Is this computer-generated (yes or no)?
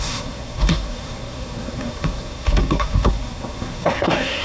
yes